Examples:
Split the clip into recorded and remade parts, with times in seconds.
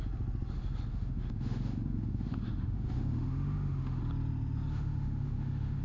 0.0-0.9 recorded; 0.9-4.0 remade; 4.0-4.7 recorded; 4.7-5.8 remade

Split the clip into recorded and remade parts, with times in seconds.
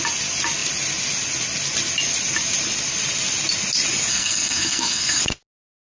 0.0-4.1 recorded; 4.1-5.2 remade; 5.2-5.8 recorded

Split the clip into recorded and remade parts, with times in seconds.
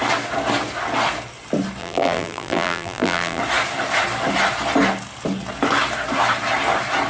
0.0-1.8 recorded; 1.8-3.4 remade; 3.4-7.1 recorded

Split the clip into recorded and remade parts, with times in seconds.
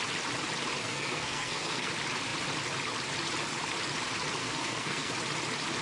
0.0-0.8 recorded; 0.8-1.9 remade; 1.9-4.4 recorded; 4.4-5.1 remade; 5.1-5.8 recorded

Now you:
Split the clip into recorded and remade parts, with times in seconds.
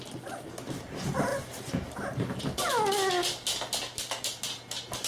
0.0-5.1 recorded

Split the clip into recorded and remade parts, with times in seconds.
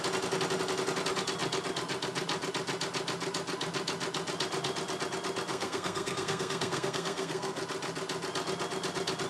0.0-5.5 recorded; 5.5-7.6 remade; 7.6-9.3 recorded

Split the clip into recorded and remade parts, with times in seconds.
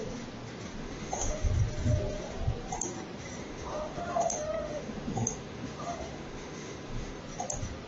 0.0-0.8 recorded; 0.8-1.4 remade; 1.4-3.4 recorded; 3.4-7.2 remade; 7.2-7.9 recorded